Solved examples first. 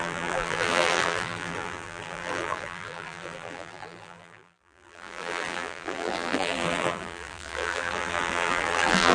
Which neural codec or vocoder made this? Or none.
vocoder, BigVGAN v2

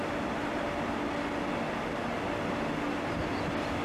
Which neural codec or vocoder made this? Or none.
none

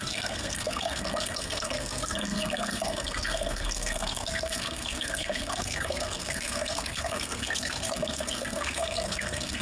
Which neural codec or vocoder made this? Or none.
codec, SNAC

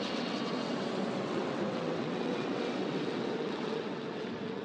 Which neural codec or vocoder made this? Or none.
vocoder, WaveNeXt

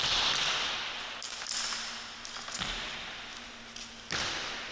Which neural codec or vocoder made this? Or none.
none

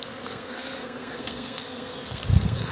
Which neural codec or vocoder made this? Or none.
codec, SNAC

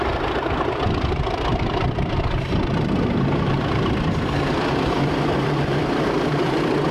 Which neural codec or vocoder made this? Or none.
vocoder, BigVGAN v2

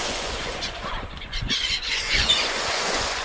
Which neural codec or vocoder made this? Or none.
vocoder, Vocos